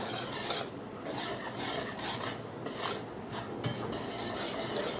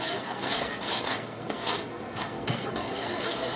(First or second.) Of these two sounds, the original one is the first